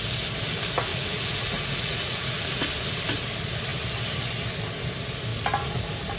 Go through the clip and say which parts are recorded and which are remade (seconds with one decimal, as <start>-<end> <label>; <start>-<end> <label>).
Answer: 0.0-0.9 recorded; 0.9-2.4 remade; 2.4-6.2 recorded